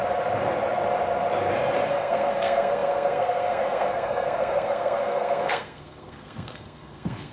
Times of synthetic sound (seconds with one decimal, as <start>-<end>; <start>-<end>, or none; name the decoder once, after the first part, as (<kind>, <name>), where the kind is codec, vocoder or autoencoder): 1.9-7.3 (codec, SNAC)